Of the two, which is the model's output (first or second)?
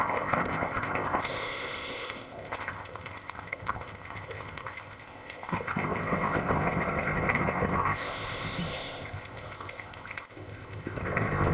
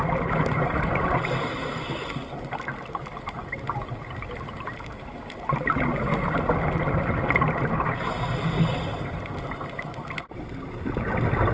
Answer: first